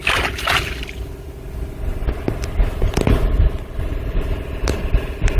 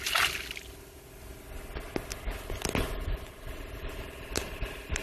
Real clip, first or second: second